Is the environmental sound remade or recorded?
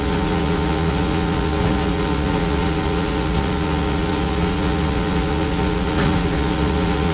remade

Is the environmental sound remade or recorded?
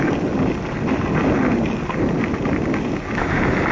recorded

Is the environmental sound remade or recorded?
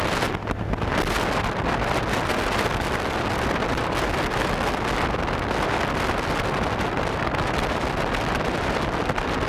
recorded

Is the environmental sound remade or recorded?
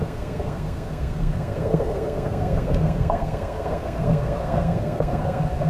remade